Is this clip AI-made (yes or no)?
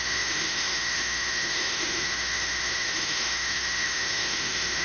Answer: yes